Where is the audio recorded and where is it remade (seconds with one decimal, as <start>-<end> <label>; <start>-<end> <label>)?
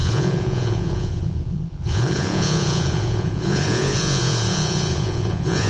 0.0-5.7 remade